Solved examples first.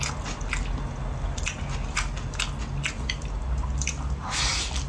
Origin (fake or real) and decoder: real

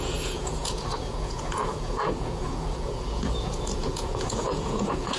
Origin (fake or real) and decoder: fake, vocoder, Vocos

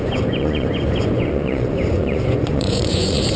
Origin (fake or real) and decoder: fake, vocoder, Vocos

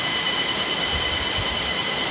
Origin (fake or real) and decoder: real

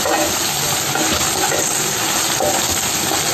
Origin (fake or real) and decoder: real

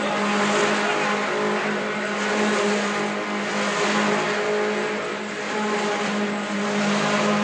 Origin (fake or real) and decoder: real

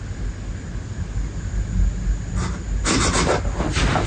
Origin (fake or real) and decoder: real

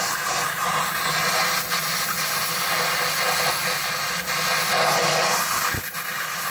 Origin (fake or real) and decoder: real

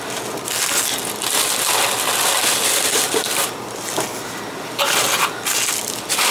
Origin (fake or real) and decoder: real